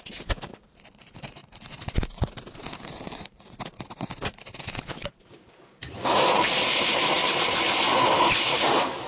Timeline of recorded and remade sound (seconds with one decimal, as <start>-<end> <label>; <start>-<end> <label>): 0.0-9.1 remade